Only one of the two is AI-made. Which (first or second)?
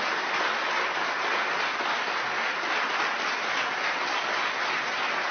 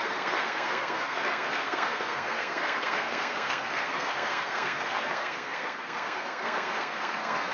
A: second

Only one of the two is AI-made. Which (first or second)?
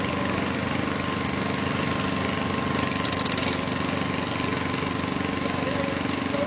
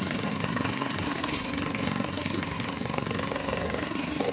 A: second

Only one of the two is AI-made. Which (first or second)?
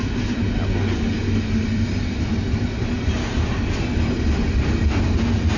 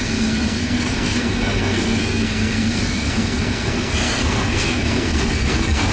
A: second